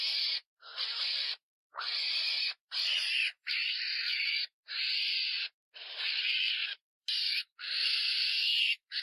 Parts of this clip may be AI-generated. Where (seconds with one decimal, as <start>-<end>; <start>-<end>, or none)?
0.0-9.0